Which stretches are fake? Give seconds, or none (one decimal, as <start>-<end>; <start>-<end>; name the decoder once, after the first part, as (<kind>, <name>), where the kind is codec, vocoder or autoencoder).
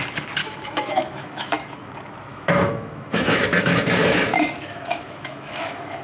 0.4-1.9 (autoencoder, DAC-VAE); 2.3-6.0